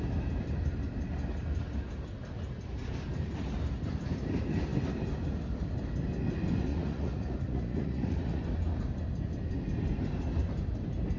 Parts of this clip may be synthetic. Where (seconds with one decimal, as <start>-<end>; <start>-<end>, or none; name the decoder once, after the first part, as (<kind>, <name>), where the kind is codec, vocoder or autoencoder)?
6.7-8.4 (vocoder, Vocos)

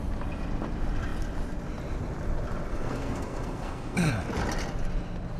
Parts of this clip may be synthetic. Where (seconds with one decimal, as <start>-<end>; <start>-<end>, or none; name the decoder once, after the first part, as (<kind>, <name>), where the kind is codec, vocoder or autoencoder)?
2.7-4.1 (codec, SNAC)

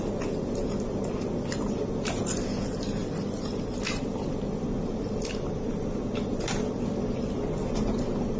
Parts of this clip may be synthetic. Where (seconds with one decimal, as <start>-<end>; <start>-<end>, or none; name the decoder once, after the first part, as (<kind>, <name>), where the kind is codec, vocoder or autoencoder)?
none

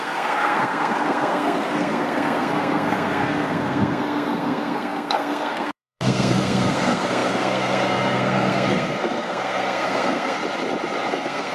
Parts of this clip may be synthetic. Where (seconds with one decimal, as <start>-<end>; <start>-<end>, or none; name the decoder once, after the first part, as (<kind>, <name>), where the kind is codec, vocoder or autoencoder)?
0.0-10.4 (codec, SNAC); 11.1-11.5

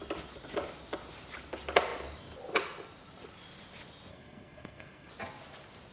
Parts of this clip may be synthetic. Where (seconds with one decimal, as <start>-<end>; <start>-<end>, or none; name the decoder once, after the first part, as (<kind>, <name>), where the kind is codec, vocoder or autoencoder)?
4.1-5.1 (codec, SNAC)

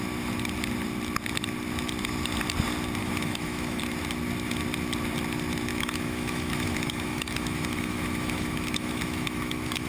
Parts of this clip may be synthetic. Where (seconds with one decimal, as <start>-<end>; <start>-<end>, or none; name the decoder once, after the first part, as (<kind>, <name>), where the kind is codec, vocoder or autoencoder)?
3.0-3.8 (autoencoder, DAC-VAE); 5.7-9.9

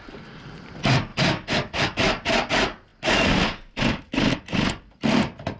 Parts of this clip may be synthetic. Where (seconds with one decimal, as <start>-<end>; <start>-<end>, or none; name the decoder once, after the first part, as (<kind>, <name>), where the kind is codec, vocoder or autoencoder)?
none

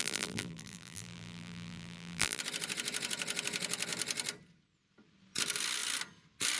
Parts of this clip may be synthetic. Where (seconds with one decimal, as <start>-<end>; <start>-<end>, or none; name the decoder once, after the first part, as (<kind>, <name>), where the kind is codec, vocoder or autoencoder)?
0.0-2.4 (vocoder, BigVGAN v2)